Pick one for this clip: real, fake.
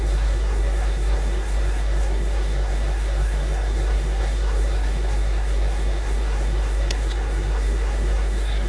fake